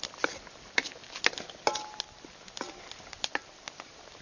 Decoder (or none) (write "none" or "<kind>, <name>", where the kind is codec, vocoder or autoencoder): none